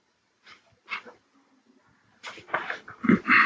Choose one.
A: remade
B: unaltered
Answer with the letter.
B